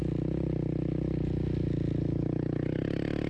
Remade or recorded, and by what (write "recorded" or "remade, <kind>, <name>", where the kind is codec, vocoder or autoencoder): recorded